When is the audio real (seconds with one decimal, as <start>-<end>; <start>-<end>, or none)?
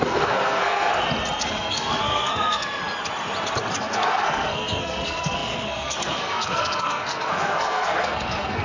0.9-1.4; 2.8-3.7